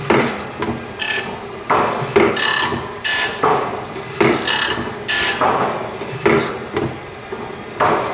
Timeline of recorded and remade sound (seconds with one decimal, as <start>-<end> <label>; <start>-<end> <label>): 0.0-8.1 recorded